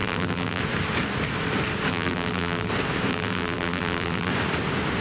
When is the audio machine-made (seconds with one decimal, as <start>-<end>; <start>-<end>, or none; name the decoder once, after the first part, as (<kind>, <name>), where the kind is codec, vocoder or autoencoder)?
0.0-0.6 (vocoder, BigVGAN v2); 1.9-2.7; 3.1-4.3